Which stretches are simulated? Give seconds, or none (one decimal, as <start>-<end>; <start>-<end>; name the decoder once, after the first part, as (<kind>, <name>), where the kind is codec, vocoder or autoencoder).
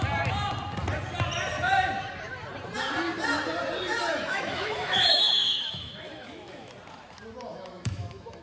4.1-6.7 (autoencoder, DAC-VAE); 7.5-8.4